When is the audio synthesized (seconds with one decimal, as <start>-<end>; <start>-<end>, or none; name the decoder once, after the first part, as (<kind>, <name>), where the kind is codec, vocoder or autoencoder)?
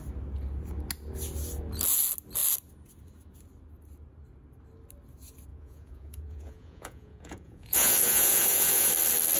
5.5-8.9 (vocoder, Vocos)